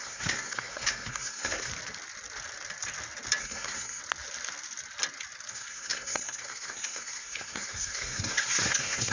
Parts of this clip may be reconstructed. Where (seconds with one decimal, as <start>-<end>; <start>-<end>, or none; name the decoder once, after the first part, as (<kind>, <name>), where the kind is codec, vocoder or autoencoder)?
0.0-1.7 (codec, SNAC); 3.4-4.0; 5.5-9.1